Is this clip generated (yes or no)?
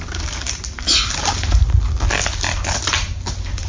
no